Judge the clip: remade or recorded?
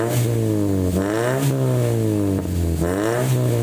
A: recorded